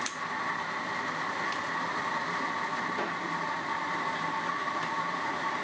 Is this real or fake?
fake